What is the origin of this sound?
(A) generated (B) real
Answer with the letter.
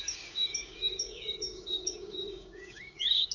A